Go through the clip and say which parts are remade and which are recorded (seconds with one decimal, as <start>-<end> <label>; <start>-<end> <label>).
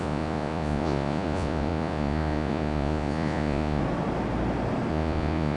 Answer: 0.0-3.8 remade; 3.8-4.9 recorded; 4.9-5.6 remade